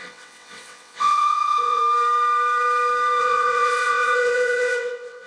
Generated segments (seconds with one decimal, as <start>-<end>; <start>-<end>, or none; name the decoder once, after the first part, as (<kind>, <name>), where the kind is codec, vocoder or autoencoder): 0.0-1.8 (vocoder, WaveNeXt); 3.2-5.3